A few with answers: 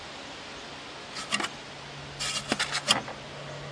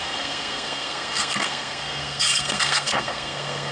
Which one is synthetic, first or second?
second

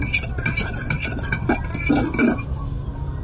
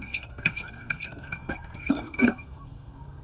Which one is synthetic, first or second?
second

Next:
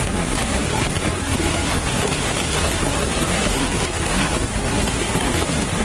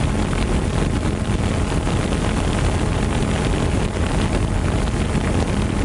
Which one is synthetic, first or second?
first